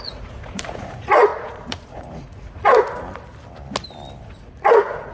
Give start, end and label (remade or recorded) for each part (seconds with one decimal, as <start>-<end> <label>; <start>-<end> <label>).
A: 0.0-2.7 remade; 2.7-4.2 recorded; 4.2-5.1 remade